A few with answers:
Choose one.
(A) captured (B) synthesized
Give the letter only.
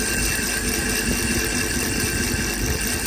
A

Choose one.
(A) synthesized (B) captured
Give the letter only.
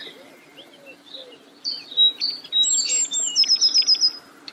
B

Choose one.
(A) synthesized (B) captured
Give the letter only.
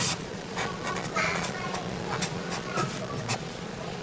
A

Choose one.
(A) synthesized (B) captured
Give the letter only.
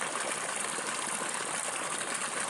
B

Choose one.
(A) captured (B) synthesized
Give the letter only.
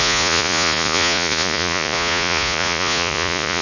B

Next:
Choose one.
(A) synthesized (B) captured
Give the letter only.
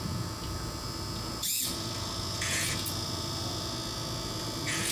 A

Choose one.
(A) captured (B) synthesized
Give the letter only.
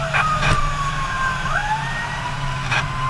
B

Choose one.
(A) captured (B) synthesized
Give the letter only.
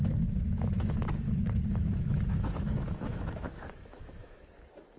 B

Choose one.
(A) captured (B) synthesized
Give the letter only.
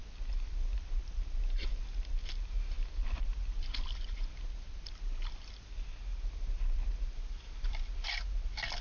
A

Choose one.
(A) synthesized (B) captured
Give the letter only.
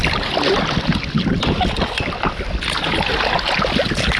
B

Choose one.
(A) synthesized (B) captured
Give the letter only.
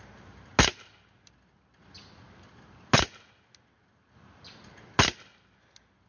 B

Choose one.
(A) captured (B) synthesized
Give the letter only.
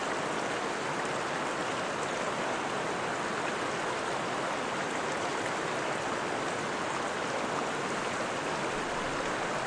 A